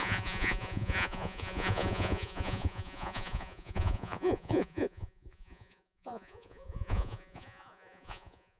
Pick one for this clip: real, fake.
fake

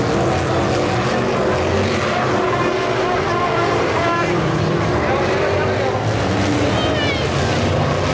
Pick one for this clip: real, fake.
real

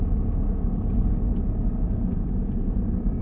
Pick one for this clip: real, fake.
real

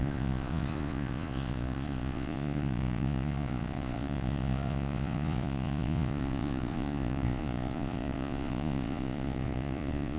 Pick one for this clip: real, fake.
fake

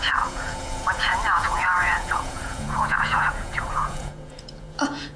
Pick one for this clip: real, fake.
fake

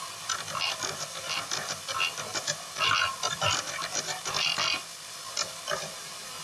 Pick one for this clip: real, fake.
real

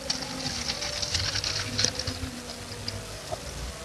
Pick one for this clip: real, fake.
real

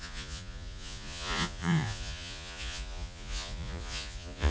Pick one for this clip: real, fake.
fake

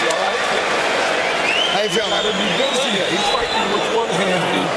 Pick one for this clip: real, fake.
fake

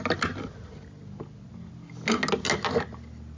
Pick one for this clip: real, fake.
real